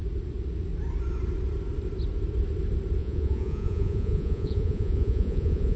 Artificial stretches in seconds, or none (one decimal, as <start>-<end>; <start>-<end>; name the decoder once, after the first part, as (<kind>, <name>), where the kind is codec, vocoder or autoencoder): 3.0-5.8 (vocoder, Vocos)